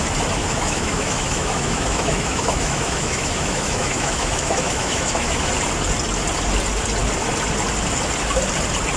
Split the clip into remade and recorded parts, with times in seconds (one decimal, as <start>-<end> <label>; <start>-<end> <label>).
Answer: 0.0-0.4 recorded; 0.4-5.5 remade; 5.5-9.0 recorded